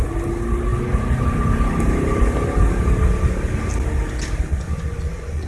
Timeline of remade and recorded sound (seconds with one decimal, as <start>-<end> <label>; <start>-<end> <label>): 0.0-4.5 recorded; 4.5-5.5 remade